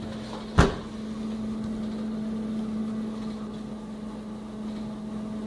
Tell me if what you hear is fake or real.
real